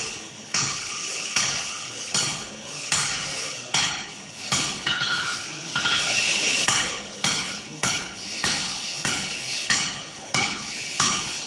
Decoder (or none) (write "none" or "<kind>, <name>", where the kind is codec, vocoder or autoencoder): codec, HILCodec